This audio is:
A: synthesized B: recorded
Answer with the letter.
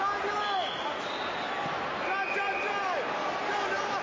B